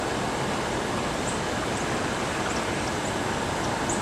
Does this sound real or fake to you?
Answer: real